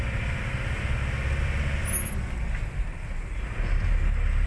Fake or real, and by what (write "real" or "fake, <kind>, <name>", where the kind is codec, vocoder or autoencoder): real